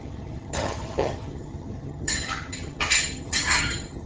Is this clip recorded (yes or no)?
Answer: no